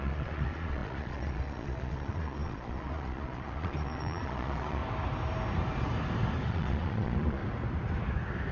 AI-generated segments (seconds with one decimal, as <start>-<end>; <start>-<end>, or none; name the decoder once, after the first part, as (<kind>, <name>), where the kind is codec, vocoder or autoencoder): 0.0-4.8 (vocoder, Vocos); 6.5-7.4